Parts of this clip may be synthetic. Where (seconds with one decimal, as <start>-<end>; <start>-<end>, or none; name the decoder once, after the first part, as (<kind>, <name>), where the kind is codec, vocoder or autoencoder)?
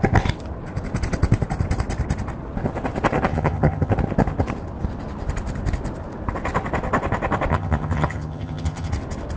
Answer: 3.3-3.9 (vocoder, HiFi-GAN); 7.5-8.9